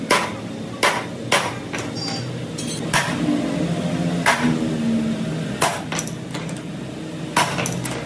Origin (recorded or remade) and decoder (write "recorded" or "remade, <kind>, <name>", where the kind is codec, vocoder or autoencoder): recorded